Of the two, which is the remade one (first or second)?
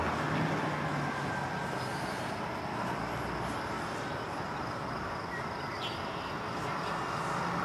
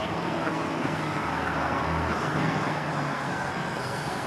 second